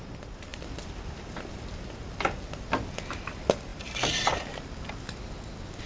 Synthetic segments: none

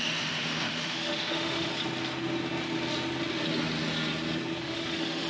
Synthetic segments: 0.0-1.7 (autoencoder, DAC-VAE); 4.6-5.3

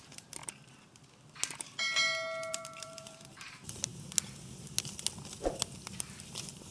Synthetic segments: 0.0-0.4 (vocoder, BigVGAN v2); 2.5-3.9; 5.9-6.7

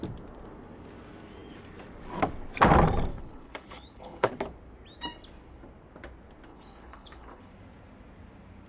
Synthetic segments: 3.1-4.3 (codec, HILCodec); 6.5-7.5

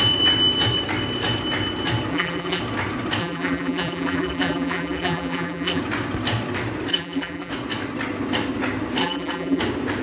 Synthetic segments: 2.1-2.6 (vocoder, BigVGAN v2); 3.2-5.8; 6.9-7.5; 9.0-9.6